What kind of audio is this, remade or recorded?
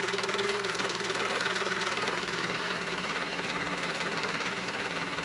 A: remade